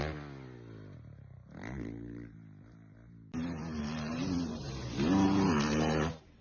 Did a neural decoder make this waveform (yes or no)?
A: no